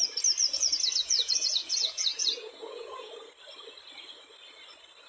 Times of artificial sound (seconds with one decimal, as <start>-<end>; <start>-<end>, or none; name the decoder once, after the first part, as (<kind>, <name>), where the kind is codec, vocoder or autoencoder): 0.4-3.1 (vocoder, Vocos)